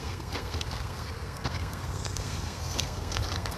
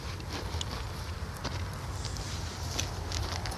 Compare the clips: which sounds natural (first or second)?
second